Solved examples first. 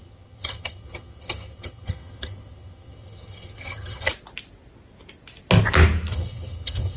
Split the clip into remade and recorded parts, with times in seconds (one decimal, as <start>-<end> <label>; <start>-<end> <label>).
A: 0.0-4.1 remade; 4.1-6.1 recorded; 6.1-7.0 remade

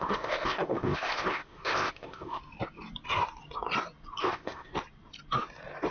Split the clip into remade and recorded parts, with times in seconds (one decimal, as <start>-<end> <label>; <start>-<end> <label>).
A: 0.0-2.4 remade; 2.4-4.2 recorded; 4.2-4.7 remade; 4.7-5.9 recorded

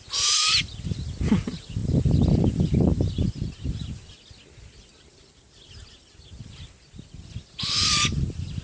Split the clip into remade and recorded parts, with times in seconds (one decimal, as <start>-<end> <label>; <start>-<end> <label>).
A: 0.0-8.6 recorded

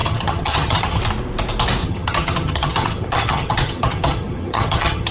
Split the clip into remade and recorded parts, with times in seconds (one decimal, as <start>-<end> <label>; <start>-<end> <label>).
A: 0.0-1.0 remade; 1.0-1.8 recorded; 1.8-5.1 remade